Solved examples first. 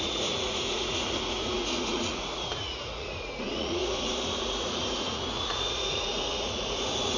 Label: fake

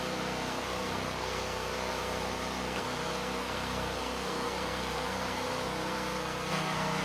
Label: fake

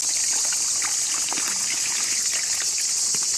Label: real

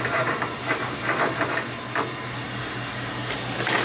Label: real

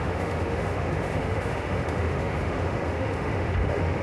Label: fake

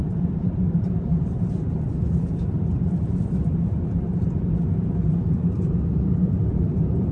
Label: fake